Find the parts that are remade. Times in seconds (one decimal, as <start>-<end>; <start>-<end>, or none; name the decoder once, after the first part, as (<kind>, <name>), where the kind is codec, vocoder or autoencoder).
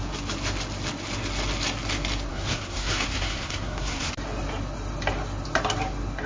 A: 2.3-4.1 (codec, SNAC)